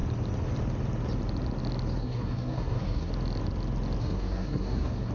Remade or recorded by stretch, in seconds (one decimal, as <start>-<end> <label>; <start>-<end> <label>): 0.0-2.0 recorded; 2.0-3.1 remade; 3.1-4.0 recorded; 4.0-5.1 remade